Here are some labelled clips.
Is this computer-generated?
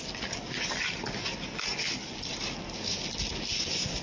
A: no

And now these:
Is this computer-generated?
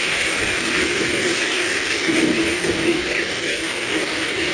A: yes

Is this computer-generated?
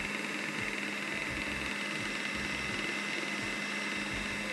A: no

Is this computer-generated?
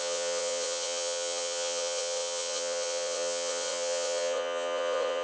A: yes